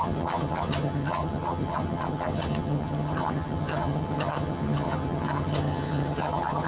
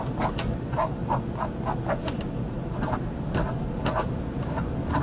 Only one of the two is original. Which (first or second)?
second